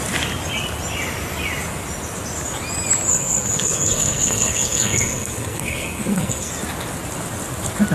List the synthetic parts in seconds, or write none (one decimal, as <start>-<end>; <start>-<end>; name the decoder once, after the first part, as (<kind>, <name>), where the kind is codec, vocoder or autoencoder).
3.1-6.5 (codec, SNAC)